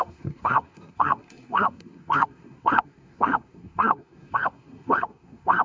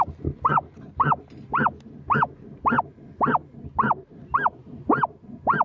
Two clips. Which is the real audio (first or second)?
second